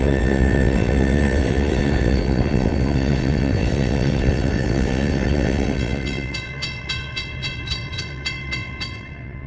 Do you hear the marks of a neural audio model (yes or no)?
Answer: yes